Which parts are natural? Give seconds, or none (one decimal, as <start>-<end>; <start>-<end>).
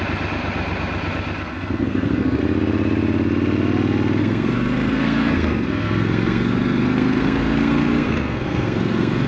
0.0-1.5; 2.4-4.2